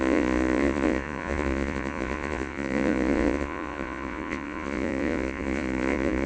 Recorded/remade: remade